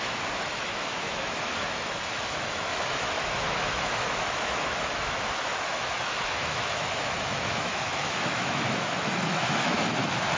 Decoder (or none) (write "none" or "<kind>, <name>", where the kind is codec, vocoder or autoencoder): autoencoder, DAC-VAE